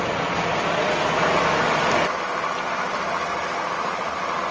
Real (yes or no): yes